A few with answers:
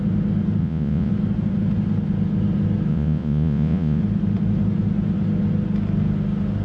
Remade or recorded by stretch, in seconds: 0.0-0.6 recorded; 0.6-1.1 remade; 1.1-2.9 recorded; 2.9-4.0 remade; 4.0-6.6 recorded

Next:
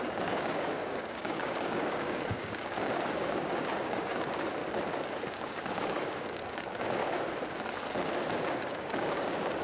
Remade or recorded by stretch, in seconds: 0.0-4.6 remade; 4.6-5.3 recorded; 5.3-7.0 remade; 7.0-8.5 recorded; 8.5-9.6 remade

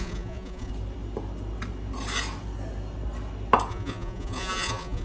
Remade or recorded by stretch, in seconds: 0.0-0.7 remade; 0.7-3.7 recorded; 3.7-5.0 remade

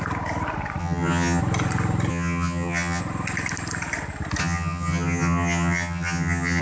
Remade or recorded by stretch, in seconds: 0.0-0.8 recorded; 0.8-1.4 remade; 1.4-2.1 recorded; 2.1-3.0 remade; 3.0-4.4 recorded; 4.4-6.6 remade

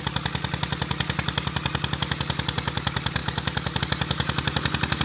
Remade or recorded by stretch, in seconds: 0.0-5.0 recorded

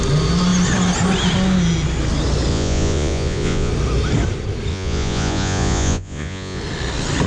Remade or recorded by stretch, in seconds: 0.0-2.5 recorded; 2.5-3.7 remade; 3.7-4.7 recorded; 4.7-6.6 remade; 6.6-7.3 recorded

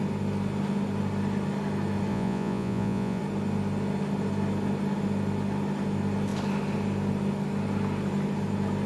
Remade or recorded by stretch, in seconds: 0.0-2.1 recorded; 2.1-3.2 remade; 3.2-8.9 recorded